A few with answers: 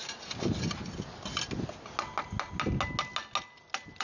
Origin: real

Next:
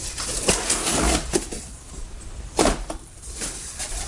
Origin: fake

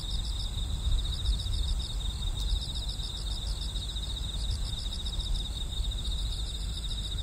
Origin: real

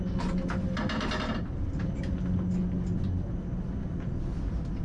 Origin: real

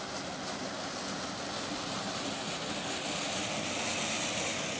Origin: real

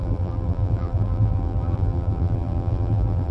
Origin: fake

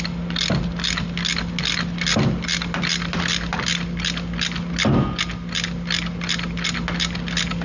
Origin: real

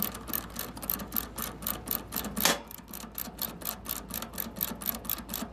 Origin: real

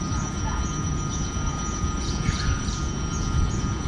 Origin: fake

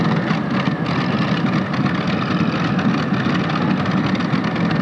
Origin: real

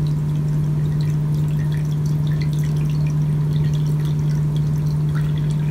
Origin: real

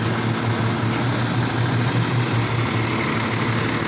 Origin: real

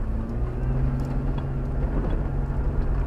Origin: real